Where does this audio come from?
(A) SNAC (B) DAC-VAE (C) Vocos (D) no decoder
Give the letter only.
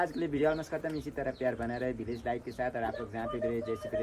D